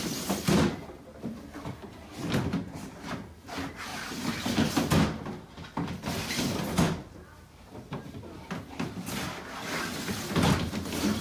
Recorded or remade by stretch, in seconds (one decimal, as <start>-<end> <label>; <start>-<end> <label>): 0.0-11.2 recorded